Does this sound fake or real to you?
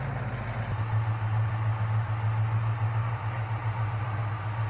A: real